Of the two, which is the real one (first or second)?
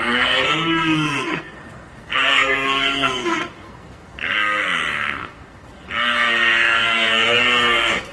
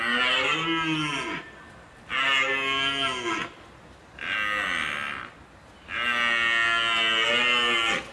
second